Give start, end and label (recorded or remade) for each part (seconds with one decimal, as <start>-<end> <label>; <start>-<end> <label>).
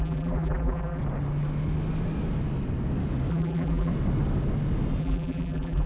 0.0-1.0 remade; 1.0-3.3 recorded; 3.3-3.9 remade; 3.9-5.0 recorded; 5.0-5.9 remade